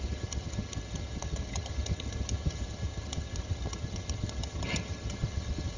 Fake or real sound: fake